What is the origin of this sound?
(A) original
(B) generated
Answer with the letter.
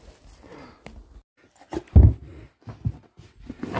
A